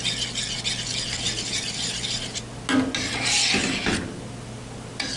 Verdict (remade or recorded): recorded